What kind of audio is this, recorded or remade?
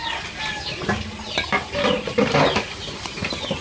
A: recorded